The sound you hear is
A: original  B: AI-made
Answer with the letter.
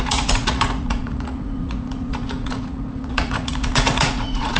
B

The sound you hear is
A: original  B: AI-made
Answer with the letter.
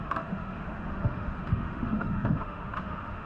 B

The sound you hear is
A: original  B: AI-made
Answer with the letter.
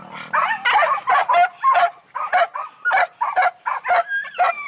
A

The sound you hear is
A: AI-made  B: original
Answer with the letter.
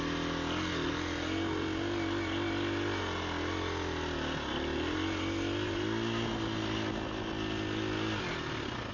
B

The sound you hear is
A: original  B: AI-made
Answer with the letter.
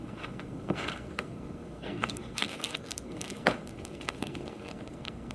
B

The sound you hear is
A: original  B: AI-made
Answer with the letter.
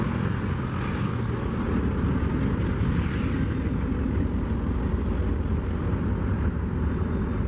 A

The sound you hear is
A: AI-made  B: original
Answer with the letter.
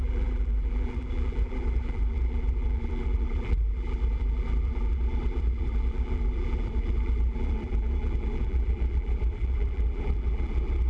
A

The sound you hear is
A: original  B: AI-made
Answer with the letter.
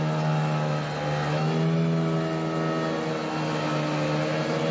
A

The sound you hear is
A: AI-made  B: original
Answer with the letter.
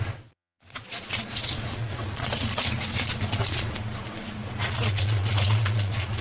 A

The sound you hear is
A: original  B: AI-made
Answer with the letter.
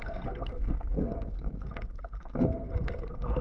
B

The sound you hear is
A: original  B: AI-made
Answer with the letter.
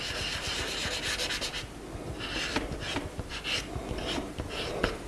A